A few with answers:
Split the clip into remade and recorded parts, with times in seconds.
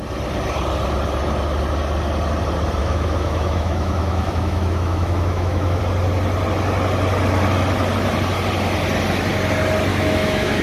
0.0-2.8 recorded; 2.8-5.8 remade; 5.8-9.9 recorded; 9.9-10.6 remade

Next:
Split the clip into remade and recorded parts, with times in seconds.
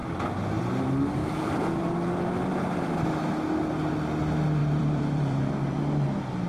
0.0-4.6 recorded; 4.6-5.8 remade; 5.8-6.5 recorded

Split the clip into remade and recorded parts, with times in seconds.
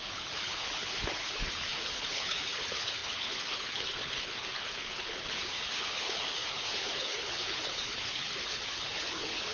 0.0-9.5 remade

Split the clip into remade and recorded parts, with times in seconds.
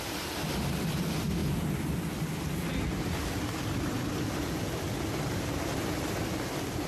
0.0-6.9 recorded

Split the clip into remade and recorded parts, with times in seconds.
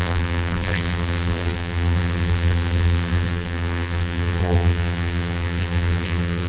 0.0-6.5 remade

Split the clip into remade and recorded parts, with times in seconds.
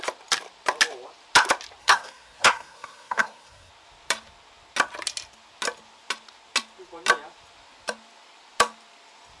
0.0-1.8 recorded; 1.8-3.7 remade; 3.7-9.4 recorded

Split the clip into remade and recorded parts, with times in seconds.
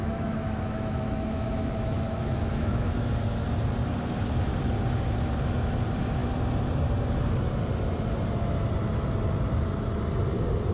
0.0-3.1 remade; 3.1-10.7 recorded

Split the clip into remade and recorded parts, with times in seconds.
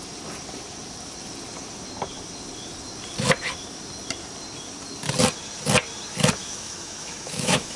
0.0-6.4 recorded; 6.4-7.8 remade